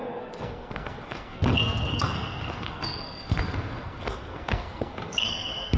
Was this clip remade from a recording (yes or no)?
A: yes